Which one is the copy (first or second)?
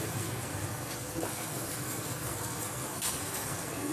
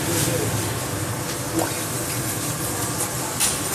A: first